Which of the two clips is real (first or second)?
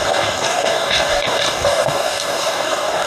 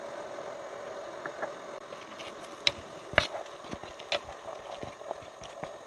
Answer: second